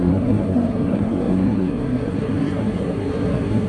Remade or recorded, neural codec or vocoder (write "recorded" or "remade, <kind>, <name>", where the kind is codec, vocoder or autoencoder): remade, codec, SNAC